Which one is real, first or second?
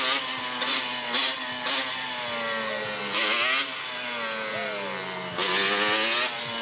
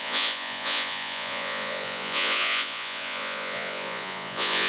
first